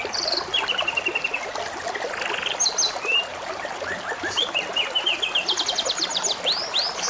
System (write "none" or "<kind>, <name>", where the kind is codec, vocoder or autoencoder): none